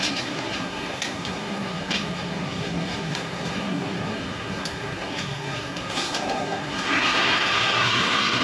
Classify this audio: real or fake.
fake